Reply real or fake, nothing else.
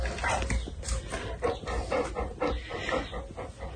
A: real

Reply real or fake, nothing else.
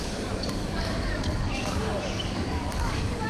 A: fake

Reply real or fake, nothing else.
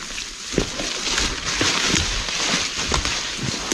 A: real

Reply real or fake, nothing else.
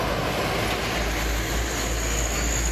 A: real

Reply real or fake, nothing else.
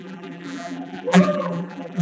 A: fake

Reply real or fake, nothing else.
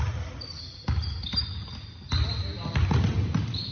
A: real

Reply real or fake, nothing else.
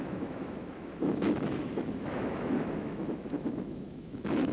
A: fake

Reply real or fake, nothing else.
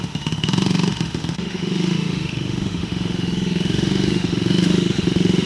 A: fake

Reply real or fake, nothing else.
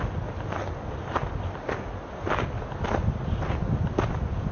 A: real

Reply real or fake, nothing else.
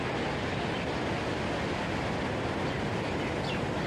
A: real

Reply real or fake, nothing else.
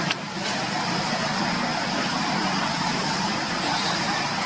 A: real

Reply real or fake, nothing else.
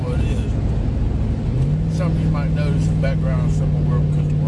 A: real